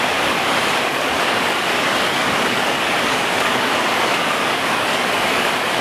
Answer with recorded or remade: remade